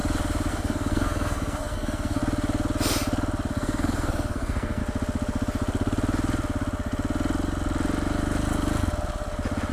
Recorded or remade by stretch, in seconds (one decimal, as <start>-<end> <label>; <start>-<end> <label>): 0.0-0.5 recorded; 0.5-2.2 remade; 2.2-3.5 recorded; 3.5-4.8 remade; 4.8-9.7 recorded